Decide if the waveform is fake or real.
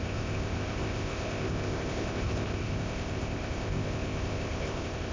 fake